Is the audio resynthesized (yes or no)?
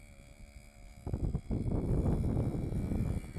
no